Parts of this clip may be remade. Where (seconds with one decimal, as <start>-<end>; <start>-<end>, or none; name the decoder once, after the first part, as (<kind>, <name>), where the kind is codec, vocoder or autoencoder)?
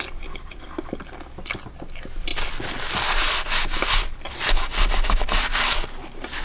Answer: none